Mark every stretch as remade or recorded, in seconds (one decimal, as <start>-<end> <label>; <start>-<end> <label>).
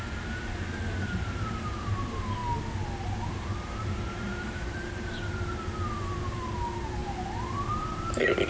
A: 0.0-2.4 remade; 2.4-3.3 recorded; 3.3-8.5 remade